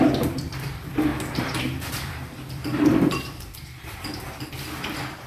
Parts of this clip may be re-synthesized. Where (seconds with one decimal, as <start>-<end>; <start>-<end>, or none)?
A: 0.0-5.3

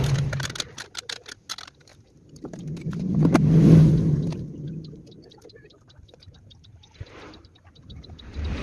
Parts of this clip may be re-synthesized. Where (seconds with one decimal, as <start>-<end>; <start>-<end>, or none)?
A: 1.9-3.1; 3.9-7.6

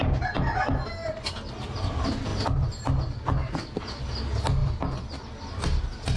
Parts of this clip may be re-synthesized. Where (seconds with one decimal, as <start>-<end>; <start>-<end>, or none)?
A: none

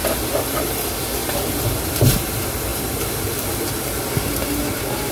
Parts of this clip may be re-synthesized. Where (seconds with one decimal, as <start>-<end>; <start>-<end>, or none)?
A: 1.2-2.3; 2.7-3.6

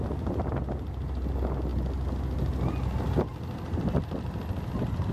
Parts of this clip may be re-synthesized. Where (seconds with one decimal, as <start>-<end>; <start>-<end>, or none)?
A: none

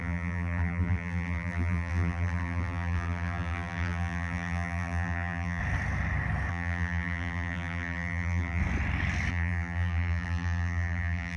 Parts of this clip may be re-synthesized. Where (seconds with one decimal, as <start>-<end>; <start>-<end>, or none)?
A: 0.0-5.6; 6.5-8.6; 9.3-11.4